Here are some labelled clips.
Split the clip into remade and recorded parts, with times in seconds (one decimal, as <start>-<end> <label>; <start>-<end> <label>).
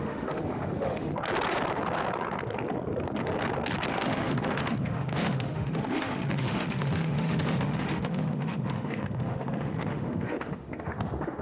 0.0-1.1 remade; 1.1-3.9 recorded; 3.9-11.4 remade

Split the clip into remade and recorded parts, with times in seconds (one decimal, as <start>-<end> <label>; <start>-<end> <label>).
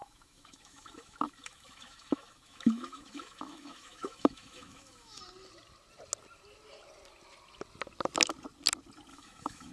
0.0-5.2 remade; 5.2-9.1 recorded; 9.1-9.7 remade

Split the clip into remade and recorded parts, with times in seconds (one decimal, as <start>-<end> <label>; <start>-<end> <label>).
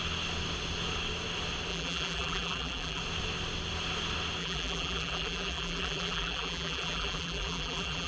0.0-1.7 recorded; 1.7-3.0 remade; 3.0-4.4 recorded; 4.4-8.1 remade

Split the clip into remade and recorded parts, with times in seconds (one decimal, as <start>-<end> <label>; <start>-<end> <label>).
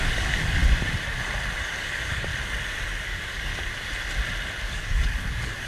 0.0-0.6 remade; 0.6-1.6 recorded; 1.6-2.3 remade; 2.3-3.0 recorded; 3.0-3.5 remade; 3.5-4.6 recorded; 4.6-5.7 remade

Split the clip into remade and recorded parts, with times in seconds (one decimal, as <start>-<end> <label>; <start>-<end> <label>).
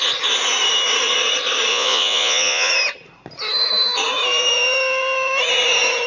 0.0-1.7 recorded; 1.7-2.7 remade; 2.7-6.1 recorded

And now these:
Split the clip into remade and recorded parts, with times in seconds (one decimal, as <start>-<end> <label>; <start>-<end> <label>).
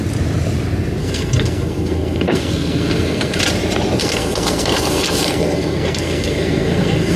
0.0-1.0 recorded; 1.0-3.4 remade; 3.4-4.0 recorded; 4.0-7.2 remade